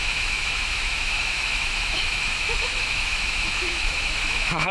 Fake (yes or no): yes